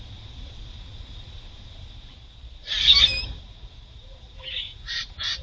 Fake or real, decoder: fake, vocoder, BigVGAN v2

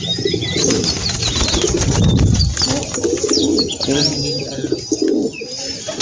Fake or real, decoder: real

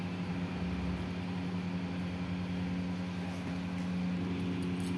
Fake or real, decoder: real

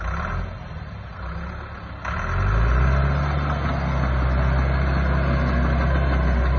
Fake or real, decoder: real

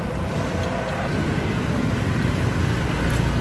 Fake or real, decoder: real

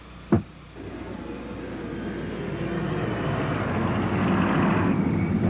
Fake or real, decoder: real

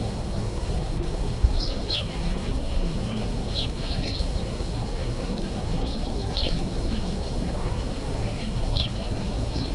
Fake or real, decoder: fake, codec, SNAC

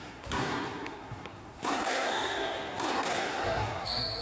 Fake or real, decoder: fake, codec, SNAC